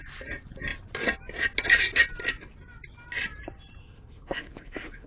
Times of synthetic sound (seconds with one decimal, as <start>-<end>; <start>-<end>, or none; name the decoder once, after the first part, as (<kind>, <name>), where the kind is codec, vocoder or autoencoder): 3.8-5.1 (autoencoder, DAC-VAE)